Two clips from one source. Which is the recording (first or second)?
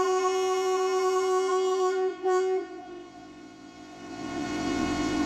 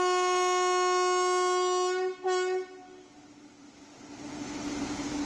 second